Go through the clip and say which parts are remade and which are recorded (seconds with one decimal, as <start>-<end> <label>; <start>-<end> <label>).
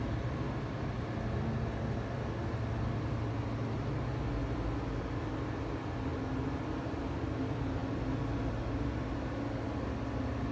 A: 0.0-10.5 recorded